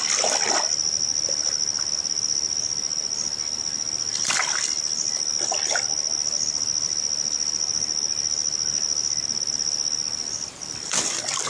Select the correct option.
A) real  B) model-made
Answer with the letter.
A